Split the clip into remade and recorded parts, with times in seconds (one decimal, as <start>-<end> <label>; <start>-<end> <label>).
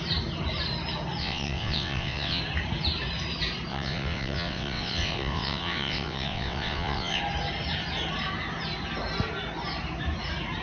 0.0-1.2 recorded; 1.2-2.4 remade; 2.4-3.7 recorded; 3.7-7.2 remade; 7.2-10.6 recorded